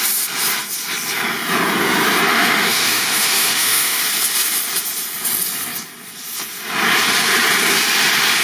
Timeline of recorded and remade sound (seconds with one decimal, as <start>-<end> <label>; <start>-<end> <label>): 0.0-2.3 recorded; 2.3-4.0 remade; 4.0-8.4 recorded